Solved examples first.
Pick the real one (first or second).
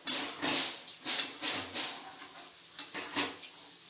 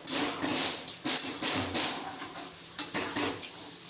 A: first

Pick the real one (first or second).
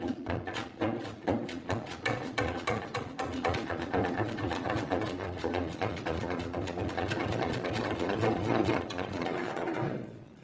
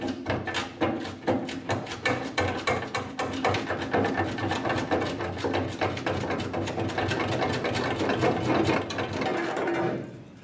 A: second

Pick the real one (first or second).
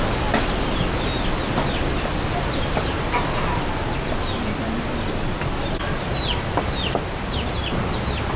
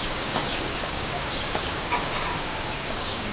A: first